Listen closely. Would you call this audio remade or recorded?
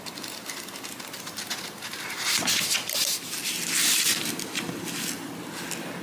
recorded